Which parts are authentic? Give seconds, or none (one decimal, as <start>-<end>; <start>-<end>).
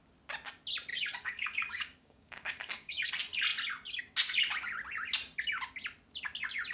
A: 0.0-0.9; 3.1-6.7